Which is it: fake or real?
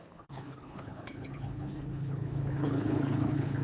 fake